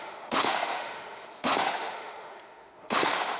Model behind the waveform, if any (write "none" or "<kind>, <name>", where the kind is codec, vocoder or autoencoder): autoencoder, DAC-VAE